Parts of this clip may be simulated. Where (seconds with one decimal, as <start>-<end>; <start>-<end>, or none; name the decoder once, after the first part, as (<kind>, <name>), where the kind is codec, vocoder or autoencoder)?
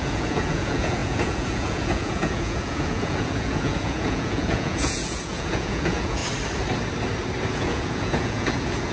0.0-6.2 (vocoder, Vocos); 7.5-8.9